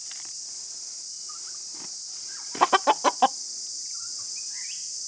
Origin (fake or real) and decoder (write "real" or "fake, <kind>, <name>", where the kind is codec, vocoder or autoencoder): real